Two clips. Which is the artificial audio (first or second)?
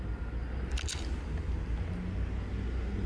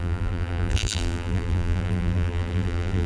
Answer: second